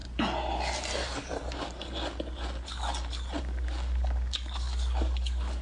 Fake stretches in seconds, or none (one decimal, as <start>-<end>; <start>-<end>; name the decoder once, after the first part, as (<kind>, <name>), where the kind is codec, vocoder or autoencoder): 3.4-5.6 (codec, DAC)